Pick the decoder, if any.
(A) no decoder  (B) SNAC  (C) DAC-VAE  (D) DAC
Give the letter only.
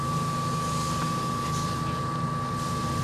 A